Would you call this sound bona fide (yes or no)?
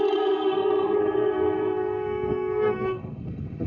no